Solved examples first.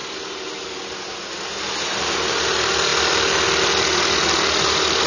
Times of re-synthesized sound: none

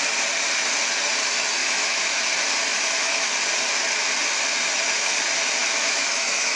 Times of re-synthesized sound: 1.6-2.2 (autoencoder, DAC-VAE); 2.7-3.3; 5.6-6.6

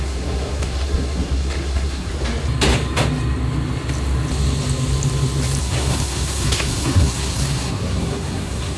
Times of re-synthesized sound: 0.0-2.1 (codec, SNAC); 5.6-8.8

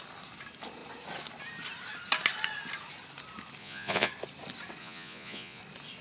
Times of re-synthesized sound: 3.6-4.1 (vocoder, Vocos); 4.8-5.6